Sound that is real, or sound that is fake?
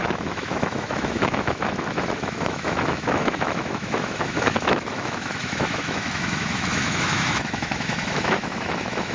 fake